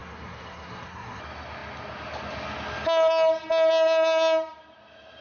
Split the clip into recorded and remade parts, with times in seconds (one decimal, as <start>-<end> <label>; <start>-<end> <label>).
0.0-1.2 remade; 1.2-5.2 recorded